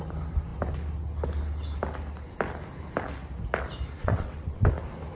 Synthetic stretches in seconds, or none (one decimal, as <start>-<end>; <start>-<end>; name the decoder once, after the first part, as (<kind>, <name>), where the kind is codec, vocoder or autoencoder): 4.0-4.7 (vocoder, WaveNeXt)